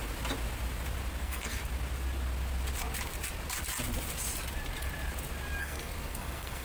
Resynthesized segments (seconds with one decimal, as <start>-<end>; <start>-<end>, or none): 1.2-1.6; 5.6-6.6